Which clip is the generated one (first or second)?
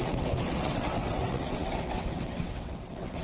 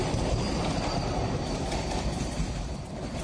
first